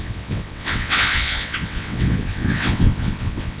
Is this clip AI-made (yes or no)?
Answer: yes